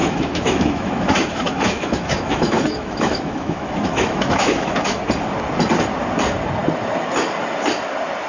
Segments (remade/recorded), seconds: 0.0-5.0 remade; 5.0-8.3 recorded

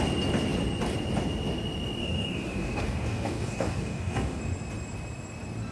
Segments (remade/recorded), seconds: 0.0-2.0 recorded; 2.0-4.4 remade; 4.4-5.7 recorded